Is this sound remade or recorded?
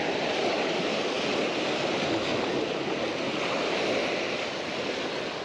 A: recorded